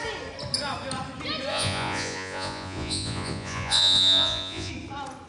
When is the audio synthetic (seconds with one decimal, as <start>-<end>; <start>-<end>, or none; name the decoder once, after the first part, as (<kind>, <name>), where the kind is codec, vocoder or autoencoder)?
1.5-4.7 (vocoder, Vocos)